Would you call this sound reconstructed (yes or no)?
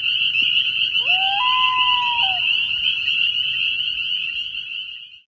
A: no